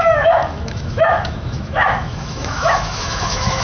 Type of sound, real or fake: fake